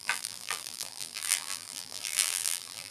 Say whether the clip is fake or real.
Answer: fake